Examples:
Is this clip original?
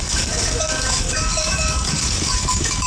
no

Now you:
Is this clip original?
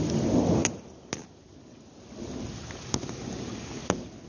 yes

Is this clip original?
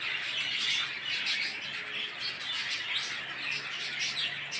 yes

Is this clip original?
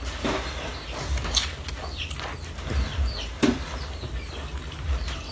yes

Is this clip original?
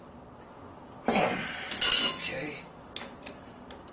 yes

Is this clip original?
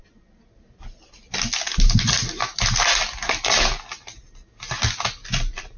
yes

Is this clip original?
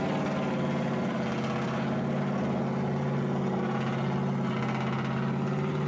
yes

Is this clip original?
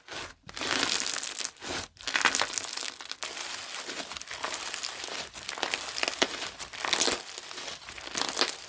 yes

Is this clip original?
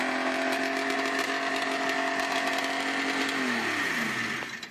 yes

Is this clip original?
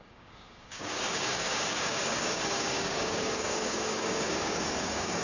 no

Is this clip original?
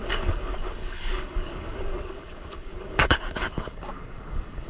no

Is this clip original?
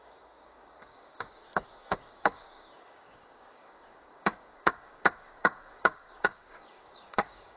no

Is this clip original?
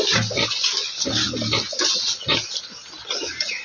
yes